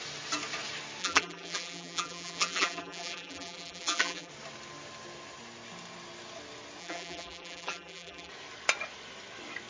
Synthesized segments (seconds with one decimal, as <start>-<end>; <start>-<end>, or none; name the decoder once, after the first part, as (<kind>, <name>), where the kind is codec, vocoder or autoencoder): 1.0-4.3 (vocoder, BigVGAN v2); 6.8-8.3